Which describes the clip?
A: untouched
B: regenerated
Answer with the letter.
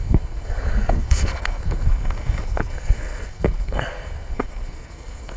B